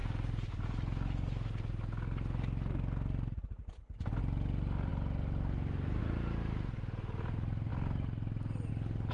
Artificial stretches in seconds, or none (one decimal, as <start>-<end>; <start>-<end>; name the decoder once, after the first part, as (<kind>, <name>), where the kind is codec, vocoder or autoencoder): none